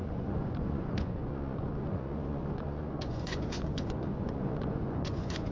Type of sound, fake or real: fake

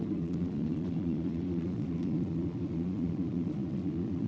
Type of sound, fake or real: fake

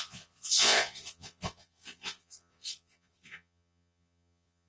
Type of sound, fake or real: fake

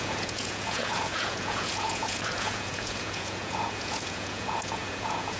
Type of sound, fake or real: fake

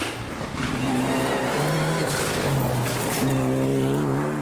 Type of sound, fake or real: real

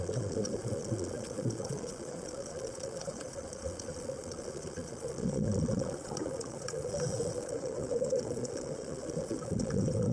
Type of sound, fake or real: fake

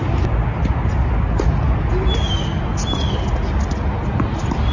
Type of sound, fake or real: real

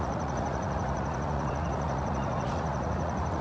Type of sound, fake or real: fake